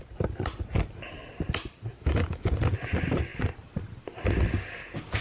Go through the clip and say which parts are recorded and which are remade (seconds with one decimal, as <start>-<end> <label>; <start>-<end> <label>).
0.0-1.9 recorded; 1.9-2.5 remade; 2.5-5.2 recorded